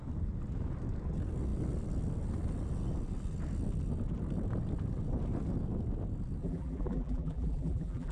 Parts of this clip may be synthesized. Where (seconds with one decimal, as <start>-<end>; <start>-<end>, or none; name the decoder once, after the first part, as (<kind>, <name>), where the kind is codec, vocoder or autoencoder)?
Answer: 6.4-8.1 (vocoder, BigVGAN v2)